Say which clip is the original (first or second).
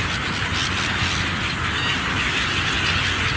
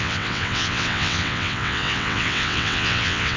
first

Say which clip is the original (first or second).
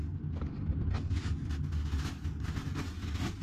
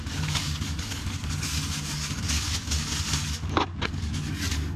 first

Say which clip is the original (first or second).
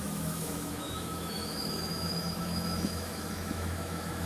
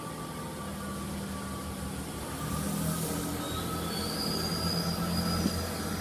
second